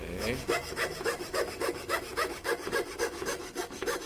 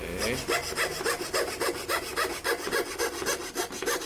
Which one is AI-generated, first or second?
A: first